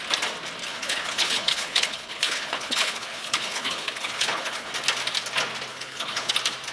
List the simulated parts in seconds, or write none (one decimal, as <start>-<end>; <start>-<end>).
0.7-4.7; 5.7-6.3